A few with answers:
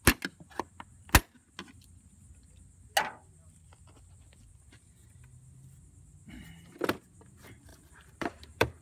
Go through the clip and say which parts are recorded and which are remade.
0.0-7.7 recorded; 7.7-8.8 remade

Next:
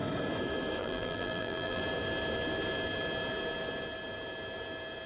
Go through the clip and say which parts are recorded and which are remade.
0.0-0.8 recorded; 0.8-1.8 remade; 1.8-5.1 recorded

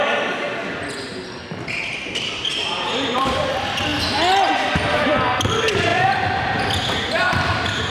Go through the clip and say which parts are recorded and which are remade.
0.0-2.5 recorded; 2.5-3.5 remade; 3.5-7.9 recorded